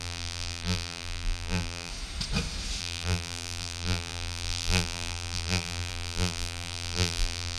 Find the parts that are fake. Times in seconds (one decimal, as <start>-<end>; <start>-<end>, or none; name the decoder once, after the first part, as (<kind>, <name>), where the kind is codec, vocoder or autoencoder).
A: 0.0-1.9 (vocoder, BigVGAN v2); 2.8-7.6